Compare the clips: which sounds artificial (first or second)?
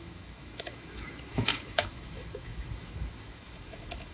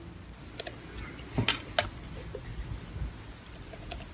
first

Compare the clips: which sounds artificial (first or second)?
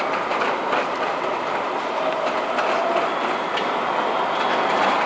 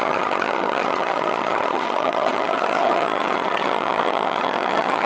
second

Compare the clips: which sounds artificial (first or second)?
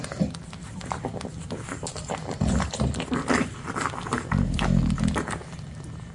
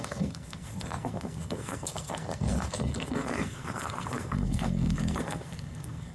second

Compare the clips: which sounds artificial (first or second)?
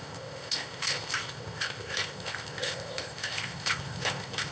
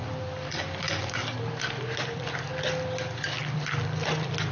first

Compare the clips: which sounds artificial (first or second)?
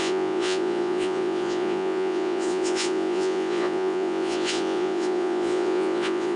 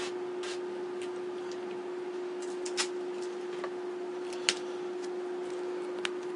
first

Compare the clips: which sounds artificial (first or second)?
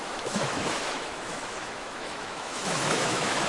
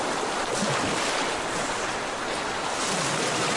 first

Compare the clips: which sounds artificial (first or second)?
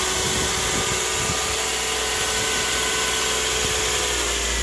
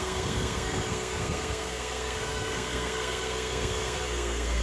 second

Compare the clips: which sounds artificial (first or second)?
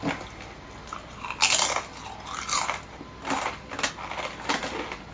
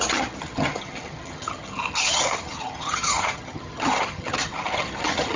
second